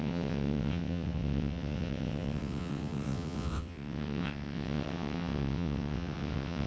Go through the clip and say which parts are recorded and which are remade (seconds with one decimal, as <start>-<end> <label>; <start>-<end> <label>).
0.0-6.7 remade